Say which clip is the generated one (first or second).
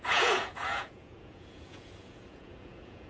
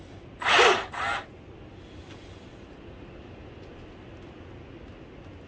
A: first